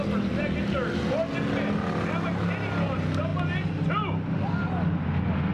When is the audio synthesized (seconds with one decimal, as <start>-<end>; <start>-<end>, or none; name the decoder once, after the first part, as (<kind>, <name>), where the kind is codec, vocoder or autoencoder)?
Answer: none